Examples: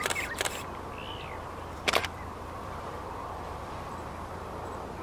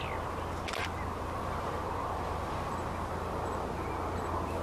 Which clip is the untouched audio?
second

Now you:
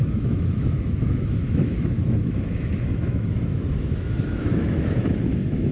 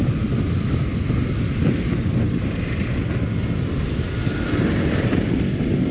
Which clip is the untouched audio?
second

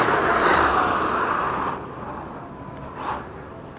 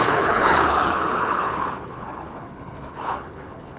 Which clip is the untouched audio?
first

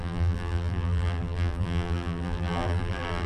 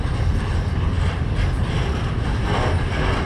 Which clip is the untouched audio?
second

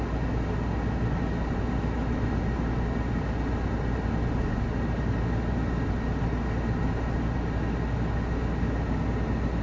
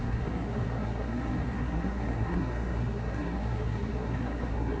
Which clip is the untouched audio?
first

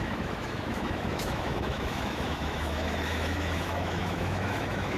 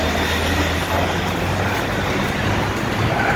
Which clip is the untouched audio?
second